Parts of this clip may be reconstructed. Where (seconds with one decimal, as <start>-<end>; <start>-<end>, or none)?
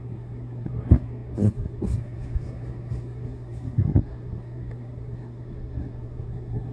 0.0-6.7